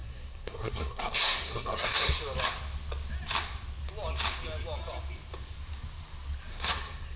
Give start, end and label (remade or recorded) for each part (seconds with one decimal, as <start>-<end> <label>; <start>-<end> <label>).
0.0-2.1 remade; 2.1-6.5 recorded; 6.5-7.2 remade